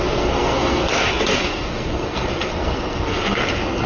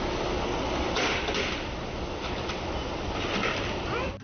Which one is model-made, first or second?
first